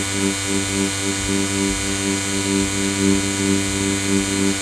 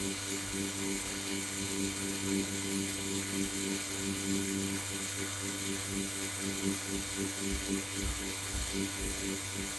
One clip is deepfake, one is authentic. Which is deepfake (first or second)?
second